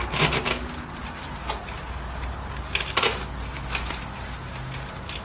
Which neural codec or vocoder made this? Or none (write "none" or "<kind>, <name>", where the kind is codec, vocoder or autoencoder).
none